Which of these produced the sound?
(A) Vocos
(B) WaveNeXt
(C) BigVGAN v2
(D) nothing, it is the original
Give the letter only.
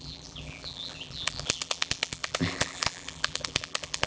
C